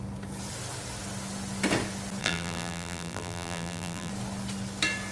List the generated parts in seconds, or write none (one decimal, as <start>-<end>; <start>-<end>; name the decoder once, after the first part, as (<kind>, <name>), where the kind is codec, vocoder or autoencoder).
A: 2.2-4.1 (vocoder, BigVGAN v2)